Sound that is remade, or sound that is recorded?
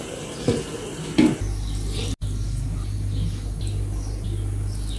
recorded